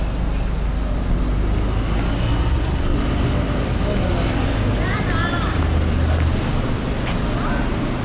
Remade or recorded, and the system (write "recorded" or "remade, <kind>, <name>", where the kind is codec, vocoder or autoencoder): recorded